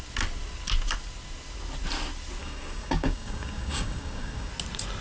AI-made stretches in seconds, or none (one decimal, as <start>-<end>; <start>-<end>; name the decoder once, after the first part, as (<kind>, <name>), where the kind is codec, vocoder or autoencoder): 2.4-4.5 (codec, DAC)

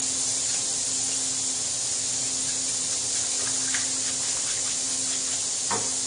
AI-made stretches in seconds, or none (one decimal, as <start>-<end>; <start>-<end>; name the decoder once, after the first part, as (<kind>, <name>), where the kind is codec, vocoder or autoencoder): none

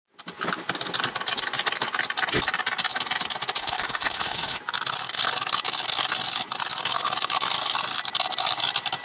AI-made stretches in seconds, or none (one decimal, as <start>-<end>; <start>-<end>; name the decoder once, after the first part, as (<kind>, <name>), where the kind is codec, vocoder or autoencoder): 3.6-4.6 (autoencoder, DAC-VAE)